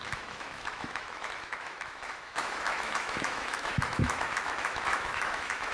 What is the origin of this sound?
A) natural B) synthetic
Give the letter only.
B